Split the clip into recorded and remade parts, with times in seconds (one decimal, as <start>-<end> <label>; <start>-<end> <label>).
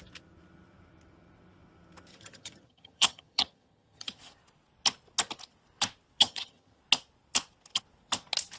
0.0-2.1 recorded; 2.1-4.2 remade; 4.2-6.2 recorded; 6.2-6.8 remade; 6.8-8.6 recorded